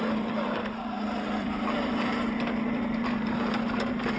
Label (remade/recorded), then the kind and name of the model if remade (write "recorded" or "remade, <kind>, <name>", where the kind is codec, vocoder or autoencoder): remade, vocoder, BigVGAN v2